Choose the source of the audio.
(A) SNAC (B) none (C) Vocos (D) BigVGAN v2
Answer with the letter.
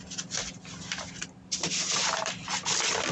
D